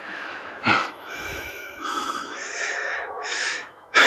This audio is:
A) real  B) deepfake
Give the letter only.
B